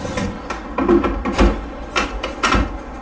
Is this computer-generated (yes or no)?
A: no